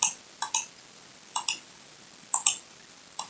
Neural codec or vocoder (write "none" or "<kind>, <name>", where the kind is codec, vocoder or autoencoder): none